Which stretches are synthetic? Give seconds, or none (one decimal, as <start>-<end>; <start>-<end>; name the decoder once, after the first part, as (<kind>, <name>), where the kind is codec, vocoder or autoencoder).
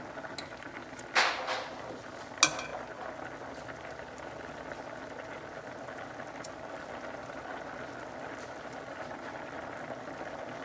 none